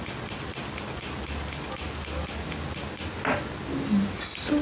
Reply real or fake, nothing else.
real